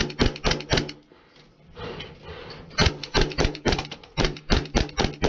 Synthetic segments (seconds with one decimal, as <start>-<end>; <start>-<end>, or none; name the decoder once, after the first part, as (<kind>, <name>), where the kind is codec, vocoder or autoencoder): 3.0-4.8 (vocoder, BigVGAN v2)